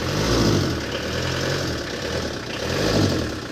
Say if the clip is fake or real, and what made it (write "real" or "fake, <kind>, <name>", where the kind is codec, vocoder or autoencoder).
real